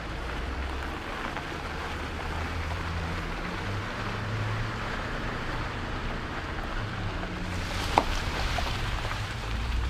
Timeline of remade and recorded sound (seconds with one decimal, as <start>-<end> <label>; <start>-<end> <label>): 0.0-0.6 remade; 0.6-1.8 recorded; 1.8-6.0 remade; 6.0-7.8 recorded; 7.8-9.9 remade